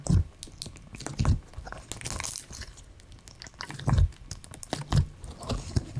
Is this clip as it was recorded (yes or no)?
yes